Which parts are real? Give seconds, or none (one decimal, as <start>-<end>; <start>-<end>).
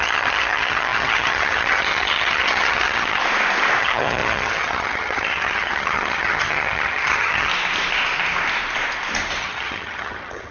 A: 3.2-3.8; 7.5-9.4